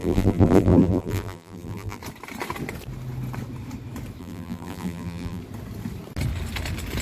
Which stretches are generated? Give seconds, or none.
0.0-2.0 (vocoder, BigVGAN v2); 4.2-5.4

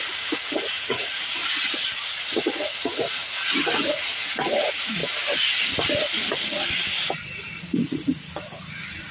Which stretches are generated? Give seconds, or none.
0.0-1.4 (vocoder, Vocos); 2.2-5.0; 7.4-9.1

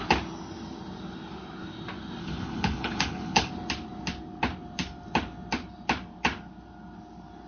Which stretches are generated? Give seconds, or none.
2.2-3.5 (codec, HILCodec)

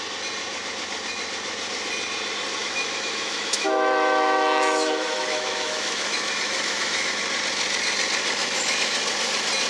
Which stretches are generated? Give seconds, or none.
2.6-7.2 (autoencoder, DAC-VAE); 8.4-9.0

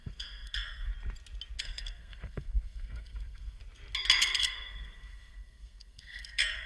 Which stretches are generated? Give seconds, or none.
0.0-0.9 (codec, SNAC); 1.6-3.6; 4.4-6.7

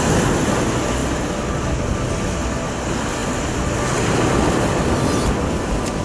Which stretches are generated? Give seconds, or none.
none